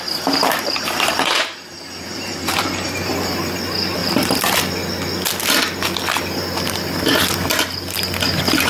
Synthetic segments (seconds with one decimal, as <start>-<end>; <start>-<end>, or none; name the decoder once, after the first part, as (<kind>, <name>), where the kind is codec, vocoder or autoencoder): 0.4-3.2 (vocoder, BigVGAN v2); 4.0-4.5